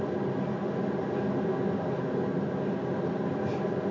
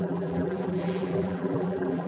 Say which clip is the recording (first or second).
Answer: first